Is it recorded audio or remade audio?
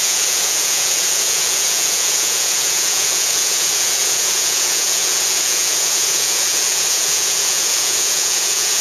remade